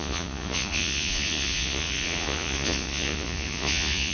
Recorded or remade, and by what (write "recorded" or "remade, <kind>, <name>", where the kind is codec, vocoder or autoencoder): remade, vocoder, Vocos